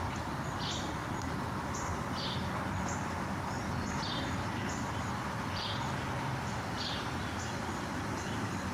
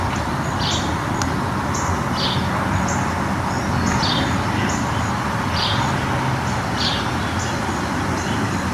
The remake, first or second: first